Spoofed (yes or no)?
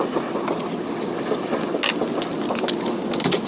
no